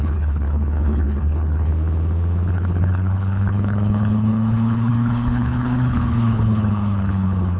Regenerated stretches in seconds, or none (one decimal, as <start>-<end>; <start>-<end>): 0.0-1.7; 2.5-7.6